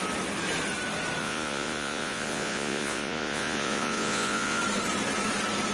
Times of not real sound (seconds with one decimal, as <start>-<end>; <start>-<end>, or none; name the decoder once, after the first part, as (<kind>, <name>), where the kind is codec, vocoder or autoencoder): 1.2-4.6 (vocoder, Vocos)